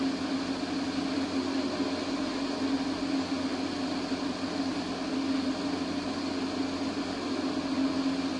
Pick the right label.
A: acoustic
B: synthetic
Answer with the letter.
A